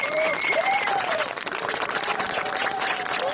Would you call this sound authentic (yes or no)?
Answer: no